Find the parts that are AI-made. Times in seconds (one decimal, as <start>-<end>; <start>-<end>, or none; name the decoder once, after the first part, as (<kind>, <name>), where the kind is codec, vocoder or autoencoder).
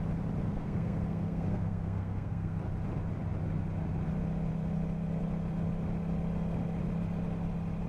0.4-2.6 (codec, SNAC)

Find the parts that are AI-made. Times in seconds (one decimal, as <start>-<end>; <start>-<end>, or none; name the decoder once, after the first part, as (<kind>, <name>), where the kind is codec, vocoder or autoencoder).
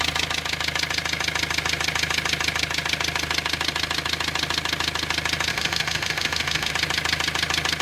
5.5-6.7 (autoencoder, DAC-VAE)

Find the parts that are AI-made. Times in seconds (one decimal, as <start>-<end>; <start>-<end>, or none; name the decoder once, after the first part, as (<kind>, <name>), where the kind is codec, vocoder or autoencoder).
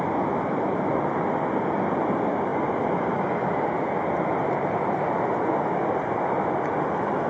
none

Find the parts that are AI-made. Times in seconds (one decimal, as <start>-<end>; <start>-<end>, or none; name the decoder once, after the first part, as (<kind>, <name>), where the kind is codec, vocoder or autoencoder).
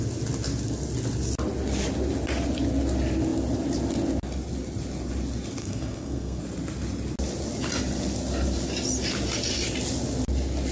5.6-6.4 (codec, SNAC)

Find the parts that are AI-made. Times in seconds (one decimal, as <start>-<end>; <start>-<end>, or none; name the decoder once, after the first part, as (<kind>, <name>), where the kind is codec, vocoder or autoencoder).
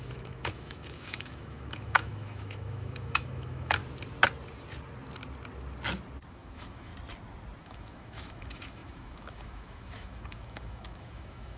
0.0-3.8 (autoencoder, DAC-VAE); 6.3-6.9; 7.6-11.6